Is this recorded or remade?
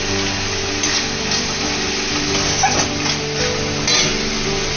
recorded